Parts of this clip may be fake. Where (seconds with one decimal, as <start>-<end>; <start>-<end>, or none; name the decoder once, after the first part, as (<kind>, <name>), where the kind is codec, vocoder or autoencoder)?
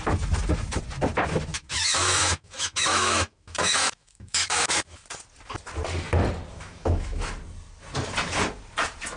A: 1.5-5.0 (autoencoder, DAC-VAE); 6.5-7.3